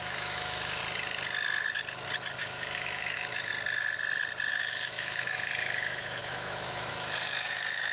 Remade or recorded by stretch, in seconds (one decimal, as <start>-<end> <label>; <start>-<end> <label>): 0.0-0.8 remade; 0.8-2.4 recorded; 2.4-3.5 remade; 3.5-4.5 recorded; 4.5-7.9 remade